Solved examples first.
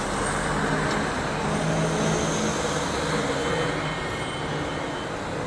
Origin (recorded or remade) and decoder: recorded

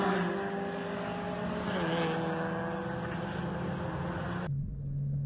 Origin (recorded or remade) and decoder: recorded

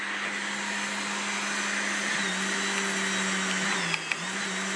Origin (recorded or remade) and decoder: recorded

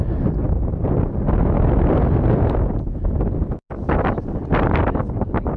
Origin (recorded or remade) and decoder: recorded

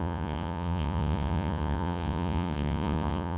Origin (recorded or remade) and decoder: remade, vocoder, Vocos